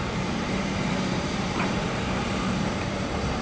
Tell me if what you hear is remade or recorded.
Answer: remade